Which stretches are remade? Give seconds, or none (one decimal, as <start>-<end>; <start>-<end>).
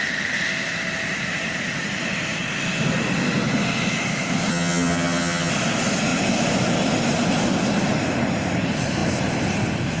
4.5-5.5